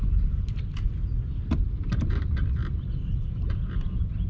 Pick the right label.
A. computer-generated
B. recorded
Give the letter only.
B